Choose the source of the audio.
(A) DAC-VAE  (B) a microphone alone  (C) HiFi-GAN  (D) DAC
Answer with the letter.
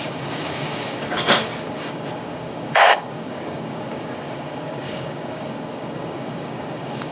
D